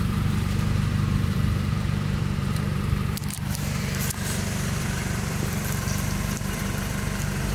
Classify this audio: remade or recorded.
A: remade